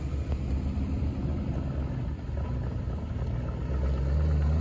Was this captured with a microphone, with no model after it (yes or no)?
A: yes